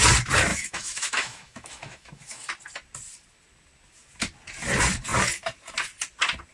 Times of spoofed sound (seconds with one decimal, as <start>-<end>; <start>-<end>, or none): 0.5-2.5